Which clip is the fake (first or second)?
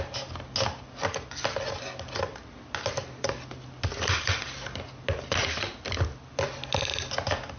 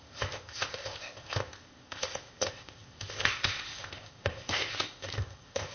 second